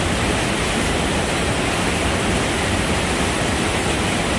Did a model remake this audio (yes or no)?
no